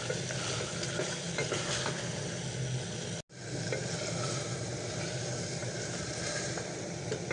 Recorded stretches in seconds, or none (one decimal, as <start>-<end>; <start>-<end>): 0.0-5.6